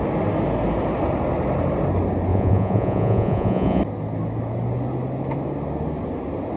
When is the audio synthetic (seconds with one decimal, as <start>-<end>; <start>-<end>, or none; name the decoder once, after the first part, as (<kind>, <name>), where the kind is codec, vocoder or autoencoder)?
2.3-3.8 (vocoder, Vocos)